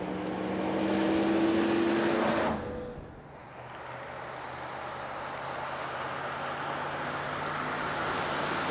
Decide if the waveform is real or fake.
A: real